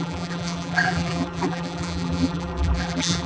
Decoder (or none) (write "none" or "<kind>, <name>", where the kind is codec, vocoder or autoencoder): vocoder, BigVGAN v2